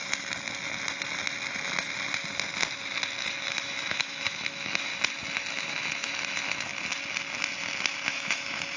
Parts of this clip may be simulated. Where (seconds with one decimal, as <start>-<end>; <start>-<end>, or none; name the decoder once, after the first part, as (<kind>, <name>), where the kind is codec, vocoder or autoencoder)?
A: 3.5-4.9 (autoencoder, DAC-VAE); 5.5-6.7; 8.1-8.8